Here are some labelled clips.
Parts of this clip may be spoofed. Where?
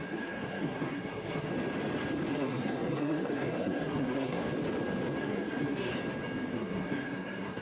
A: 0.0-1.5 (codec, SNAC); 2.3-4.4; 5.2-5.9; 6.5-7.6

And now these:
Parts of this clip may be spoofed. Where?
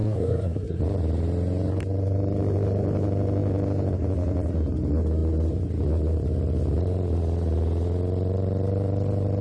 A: 0.0-0.8 (codec, SNAC)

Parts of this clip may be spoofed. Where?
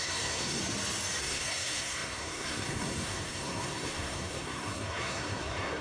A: 0.0-0.6 (codec, SNAC); 1.2-5.8